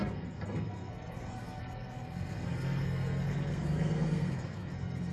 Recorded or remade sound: remade